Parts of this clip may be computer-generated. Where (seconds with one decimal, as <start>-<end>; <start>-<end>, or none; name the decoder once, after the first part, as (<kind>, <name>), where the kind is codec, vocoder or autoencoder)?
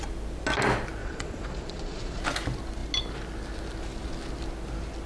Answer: 1.0-2.2 (vocoder, Vocos)